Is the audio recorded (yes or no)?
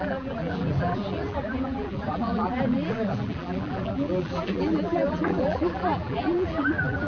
no